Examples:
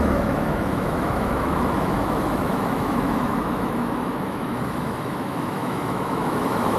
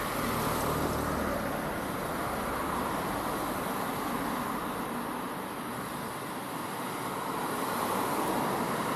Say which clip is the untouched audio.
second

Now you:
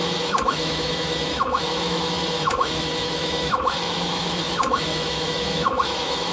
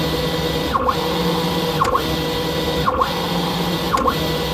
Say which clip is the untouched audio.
second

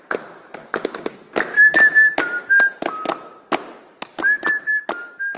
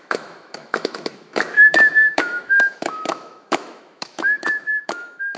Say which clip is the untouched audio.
first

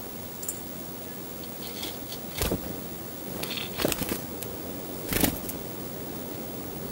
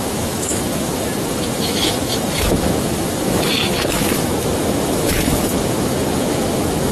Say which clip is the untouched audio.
first